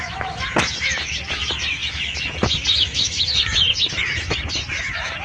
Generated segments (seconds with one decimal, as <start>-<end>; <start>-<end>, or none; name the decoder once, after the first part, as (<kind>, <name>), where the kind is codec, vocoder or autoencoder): 0.0-5.2 (autoencoder, DAC-VAE)